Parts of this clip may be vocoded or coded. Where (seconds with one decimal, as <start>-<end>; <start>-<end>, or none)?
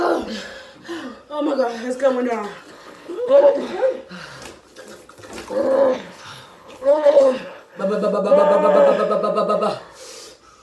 2.7-3.7; 5.9-7.8